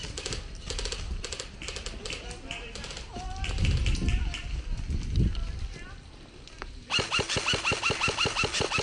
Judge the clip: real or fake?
real